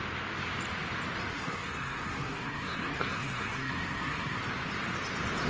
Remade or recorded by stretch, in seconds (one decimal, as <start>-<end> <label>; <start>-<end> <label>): 0.0-1.3 recorded; 1.3-4.4 remade; 4.4-5.5 recorded